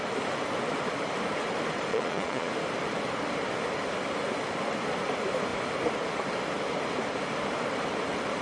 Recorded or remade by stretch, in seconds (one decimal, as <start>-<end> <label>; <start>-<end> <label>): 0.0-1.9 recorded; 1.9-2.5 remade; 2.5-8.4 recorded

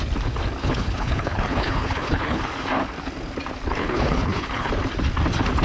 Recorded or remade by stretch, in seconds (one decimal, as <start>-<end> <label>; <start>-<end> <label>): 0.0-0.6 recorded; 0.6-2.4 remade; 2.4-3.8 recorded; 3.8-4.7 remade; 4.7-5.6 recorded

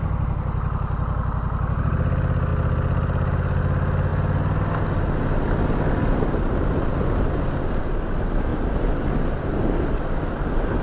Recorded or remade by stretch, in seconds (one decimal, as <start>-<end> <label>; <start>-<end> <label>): 0.0-10.8 recorded

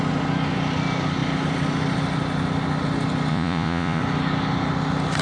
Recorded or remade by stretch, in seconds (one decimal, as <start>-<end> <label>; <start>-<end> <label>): 0.0-3.3 recorded; 3.3-4.0 remade; 4.0-5.2 recorded